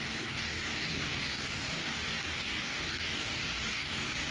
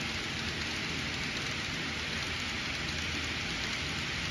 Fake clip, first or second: first